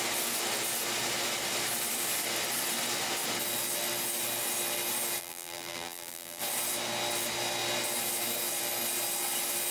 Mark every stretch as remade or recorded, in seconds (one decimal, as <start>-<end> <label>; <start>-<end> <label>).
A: 0.0-5.2 recorded; 5.2-6.4 remade; 6.4-9.7 recorded